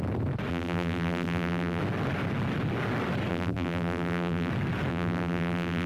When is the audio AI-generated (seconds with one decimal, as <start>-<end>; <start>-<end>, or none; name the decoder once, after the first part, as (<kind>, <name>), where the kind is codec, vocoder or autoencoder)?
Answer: 0.5-1.8 (vocoder, BigVGAN v2); 3.3-4.5; 4.9-5.9